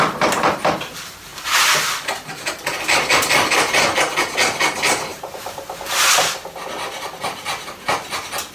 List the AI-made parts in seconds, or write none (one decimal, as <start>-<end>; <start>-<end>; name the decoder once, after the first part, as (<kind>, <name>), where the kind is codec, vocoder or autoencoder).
5.1-6.2 (vocoder, BigVGAN v2)